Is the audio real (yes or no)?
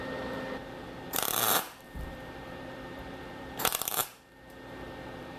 no